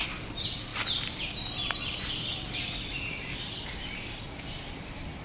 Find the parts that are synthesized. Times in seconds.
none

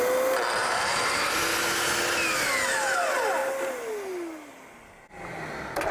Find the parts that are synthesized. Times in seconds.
0.6-1.4

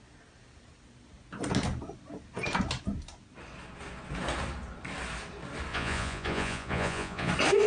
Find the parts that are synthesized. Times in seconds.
5.7-7.3

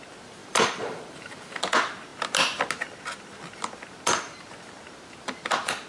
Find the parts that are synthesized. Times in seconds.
0.4-1.6

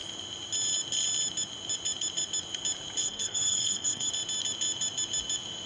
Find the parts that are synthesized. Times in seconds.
3.0-4.1

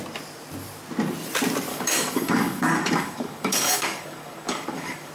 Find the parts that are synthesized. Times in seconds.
1.7-5.1